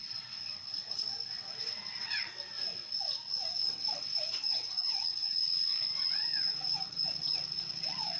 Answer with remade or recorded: remade